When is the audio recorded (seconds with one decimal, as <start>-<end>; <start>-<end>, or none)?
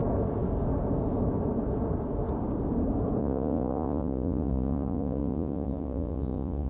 0.0-3.2